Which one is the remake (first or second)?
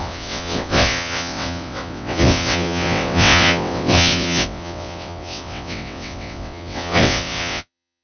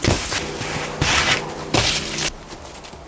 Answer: first